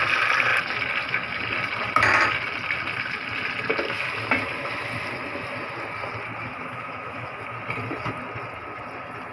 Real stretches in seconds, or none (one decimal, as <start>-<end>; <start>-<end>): 0.0-6.5; 7.4-9.3